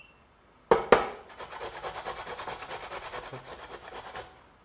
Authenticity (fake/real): real